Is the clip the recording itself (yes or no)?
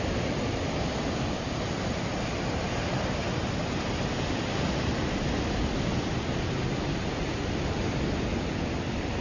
yes